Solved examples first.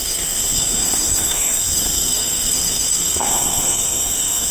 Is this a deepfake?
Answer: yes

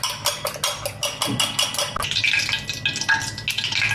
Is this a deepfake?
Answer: no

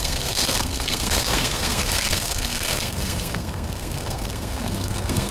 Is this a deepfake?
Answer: yes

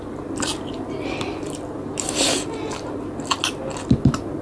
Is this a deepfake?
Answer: no